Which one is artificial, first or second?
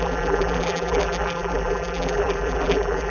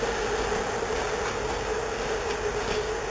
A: first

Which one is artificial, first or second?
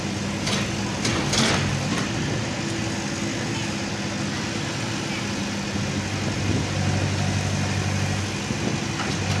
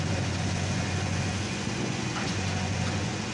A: second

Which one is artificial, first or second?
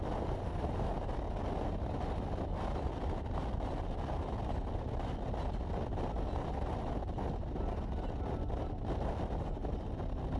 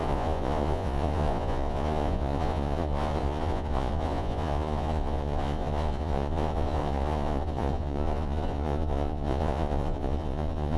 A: second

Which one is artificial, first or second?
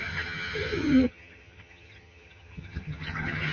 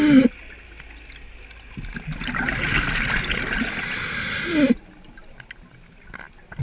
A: first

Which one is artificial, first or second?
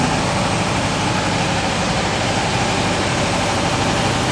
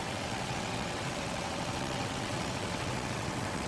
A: second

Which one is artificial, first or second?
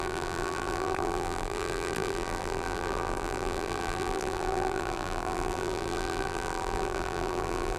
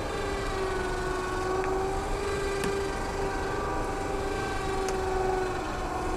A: first